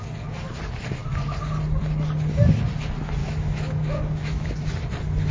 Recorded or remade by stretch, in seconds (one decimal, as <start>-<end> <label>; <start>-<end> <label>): 0.0-3.2 recorded; 3.2-4.5 remade; 4.5-5.3 recorded